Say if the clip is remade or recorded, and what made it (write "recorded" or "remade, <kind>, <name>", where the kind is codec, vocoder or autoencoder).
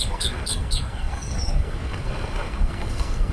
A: remade, codec, SNAC